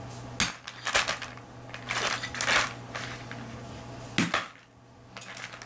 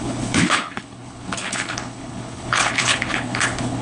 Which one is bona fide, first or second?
first